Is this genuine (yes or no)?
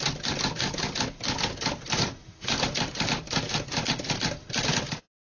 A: yes